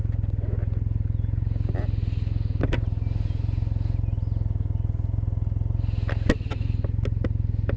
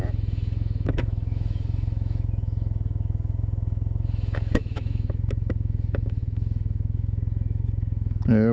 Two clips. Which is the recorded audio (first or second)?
first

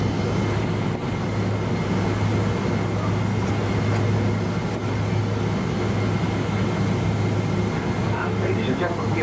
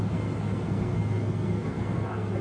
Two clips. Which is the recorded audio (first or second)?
first